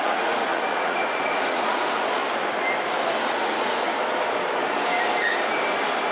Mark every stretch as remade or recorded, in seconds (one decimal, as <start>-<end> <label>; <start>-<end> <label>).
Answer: 0.0-2.2 remade; 2.2-3.3 recorded; 3.3-3.9 remade; 3.9-6.1 recorded